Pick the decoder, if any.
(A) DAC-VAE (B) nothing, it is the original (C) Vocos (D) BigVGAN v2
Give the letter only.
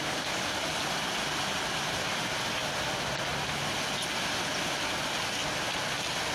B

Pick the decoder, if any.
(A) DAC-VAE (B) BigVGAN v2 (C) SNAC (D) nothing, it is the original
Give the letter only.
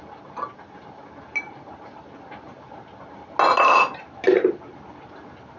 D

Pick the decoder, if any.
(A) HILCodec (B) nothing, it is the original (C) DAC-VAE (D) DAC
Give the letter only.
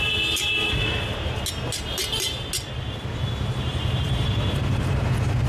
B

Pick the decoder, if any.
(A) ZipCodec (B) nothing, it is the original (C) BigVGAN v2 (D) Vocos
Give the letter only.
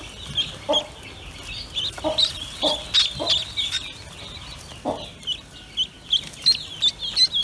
B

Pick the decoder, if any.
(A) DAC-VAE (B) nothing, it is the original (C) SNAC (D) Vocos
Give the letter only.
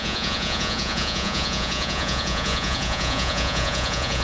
D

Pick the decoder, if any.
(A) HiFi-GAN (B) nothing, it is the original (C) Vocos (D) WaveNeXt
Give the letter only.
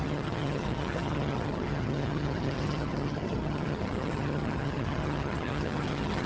A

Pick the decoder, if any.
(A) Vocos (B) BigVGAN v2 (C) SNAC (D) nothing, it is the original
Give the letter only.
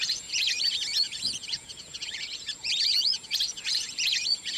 A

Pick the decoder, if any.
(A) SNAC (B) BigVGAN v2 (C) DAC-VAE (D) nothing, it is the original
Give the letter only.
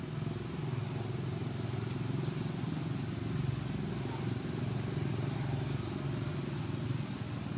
D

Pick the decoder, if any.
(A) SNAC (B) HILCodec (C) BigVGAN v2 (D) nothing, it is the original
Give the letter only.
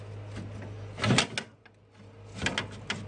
D